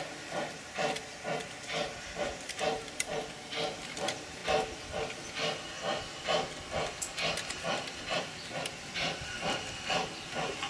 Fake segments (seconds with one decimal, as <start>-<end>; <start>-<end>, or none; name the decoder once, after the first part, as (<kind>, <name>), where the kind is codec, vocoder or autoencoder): 0.0-1.1 (vocoder, BigVGAN v2); 2.2-3.1; 3.8-4.4; 8.2-10.7